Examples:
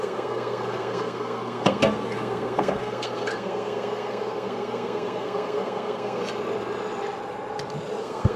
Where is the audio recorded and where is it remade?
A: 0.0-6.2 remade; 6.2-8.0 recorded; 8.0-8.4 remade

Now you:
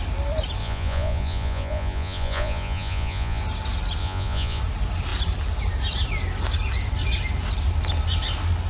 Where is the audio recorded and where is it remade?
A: 0.0-0.6 recorded; 0.6-3.4 remade; 3.4-4.0 recorded; 4.0-4.6 remade; 4.6-8.7 recorded

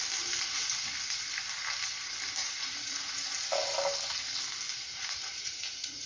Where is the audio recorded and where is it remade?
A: 0.0-2.4 recorded; 2.4-3.1 remade; 3.1-4.7 recorded; 4.7-6.1 remade